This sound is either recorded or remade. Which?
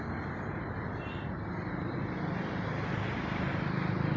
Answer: recorded